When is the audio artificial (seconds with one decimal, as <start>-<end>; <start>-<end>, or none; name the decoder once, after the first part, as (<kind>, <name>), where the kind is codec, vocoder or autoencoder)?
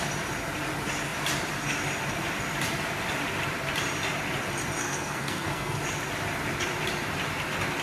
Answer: 4.8-5.8 (codec, SNAC)